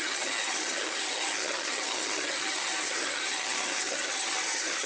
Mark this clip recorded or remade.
remade